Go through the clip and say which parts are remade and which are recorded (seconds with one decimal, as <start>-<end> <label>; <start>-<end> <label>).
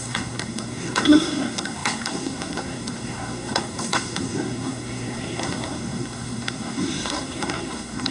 0.0-8.1 remade